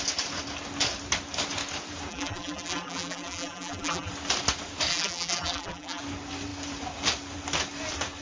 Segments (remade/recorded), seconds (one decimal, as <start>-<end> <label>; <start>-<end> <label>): 0.0-2.1 recorded; 2.1-4.1 remade; 4.1-4.9 recorded; 4.9-6.0 remade; 6.0-8.2 recorded